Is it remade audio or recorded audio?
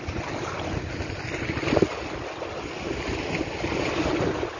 recorded